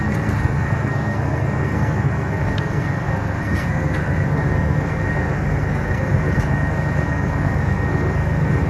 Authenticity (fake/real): fake